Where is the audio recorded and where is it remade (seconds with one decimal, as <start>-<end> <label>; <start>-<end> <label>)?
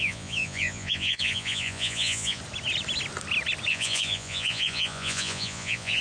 0.0-2.4 remade; 2.4-3.7 recorded; 3.7-6.0 remade